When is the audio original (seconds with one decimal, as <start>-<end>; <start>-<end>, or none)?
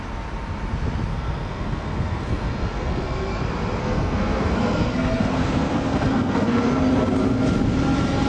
0.0-1.1; 3.4-3.8; 6.7-8.3